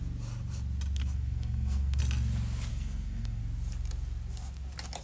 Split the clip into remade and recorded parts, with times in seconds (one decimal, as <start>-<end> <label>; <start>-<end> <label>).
0.0-1.0 recorded; 1.0-2.0 remade; 2.0-2.7 recorded; 2.7-3.4 remade; 3.4-5.0 recorded